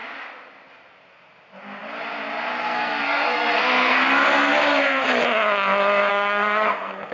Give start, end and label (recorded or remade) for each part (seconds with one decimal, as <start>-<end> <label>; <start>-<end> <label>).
0.0-2.6 recorded; 2.6-4.0 remade; 4.0-6.1 recorded; 6.1-7.1 remade